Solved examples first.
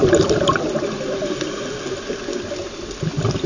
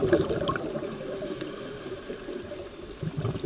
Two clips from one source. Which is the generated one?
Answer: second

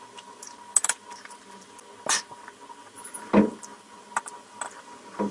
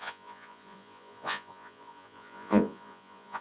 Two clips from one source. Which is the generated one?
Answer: second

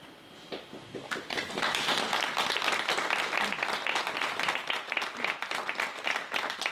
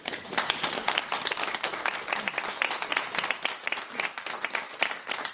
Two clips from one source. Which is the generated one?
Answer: second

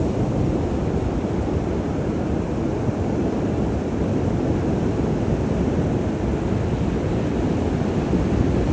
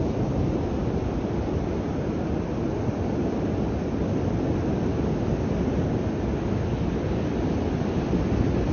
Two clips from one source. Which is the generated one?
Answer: first